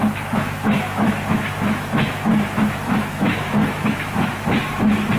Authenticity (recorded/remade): remade